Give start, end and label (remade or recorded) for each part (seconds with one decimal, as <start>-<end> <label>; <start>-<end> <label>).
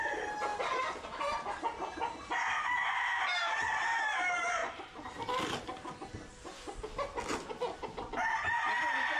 0.0-4.6 recorded; 4.6-6.2 remade; 6.2-9.2 recorded